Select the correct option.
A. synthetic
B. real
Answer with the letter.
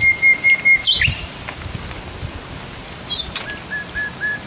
B